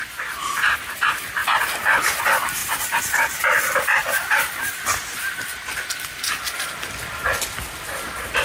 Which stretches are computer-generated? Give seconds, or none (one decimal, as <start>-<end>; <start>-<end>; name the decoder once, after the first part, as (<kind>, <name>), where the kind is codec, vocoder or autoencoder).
1.4-2.2 (vocoder, BigVGAN v2); 2.6-3.4; 4.0-5.0